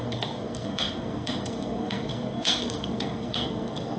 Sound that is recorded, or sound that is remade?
remade